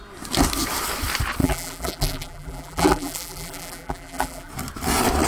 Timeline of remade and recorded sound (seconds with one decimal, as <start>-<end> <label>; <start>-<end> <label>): 0.0-1.4 recorded; 1.4-4.5 remade; 4.5-5.3 recorded